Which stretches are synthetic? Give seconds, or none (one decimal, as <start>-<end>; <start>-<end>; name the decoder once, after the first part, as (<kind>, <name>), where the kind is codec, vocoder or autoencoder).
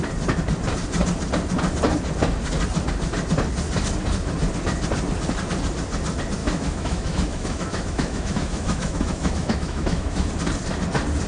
6.4-10.3 (autoencoder, DAC-VAE)